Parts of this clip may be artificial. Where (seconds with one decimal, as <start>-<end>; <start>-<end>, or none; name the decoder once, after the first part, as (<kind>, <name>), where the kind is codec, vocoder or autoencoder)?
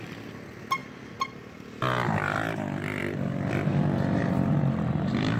none